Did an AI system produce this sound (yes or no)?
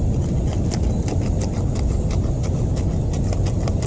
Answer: no